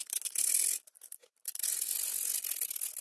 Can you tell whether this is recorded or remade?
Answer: recorded